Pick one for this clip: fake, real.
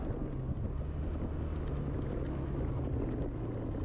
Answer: real